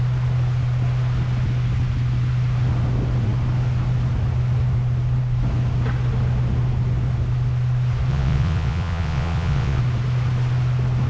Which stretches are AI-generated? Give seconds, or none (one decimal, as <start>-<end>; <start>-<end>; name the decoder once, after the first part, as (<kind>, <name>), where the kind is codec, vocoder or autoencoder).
8.1-9.8 (vocoder, Vocos)